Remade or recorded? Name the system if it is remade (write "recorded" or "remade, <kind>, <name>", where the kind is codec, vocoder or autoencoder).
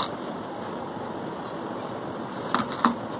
recorded